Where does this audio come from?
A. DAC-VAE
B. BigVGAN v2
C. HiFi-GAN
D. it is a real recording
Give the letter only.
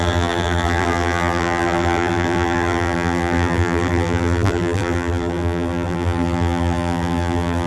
B